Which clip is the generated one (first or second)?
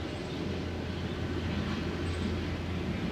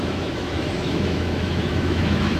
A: second